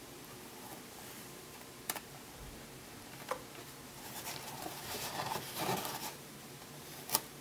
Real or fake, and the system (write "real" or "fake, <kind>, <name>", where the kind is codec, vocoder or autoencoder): fake, vocoder, BigVGAN v2